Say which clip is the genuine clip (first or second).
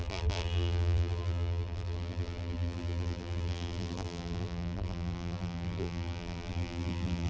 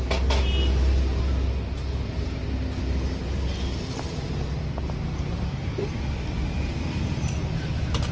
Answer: second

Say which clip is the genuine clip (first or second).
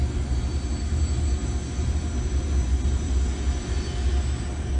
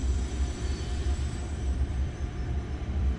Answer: first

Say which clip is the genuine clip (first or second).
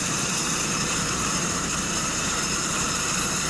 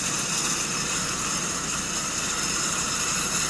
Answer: second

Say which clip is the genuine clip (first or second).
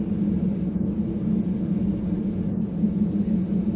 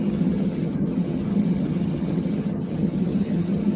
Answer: first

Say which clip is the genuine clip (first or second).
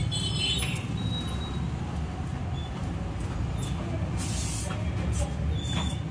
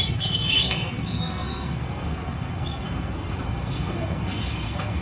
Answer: first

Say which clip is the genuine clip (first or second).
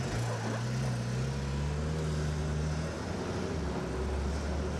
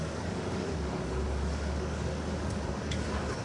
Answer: first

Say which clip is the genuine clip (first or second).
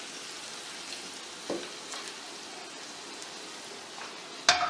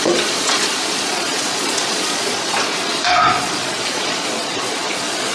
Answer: first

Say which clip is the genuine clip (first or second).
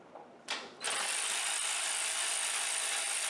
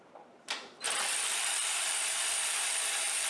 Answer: first